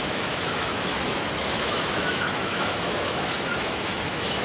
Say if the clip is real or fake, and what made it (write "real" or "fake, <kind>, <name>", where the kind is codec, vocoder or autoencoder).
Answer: fake, autoencoder, DAC-VAE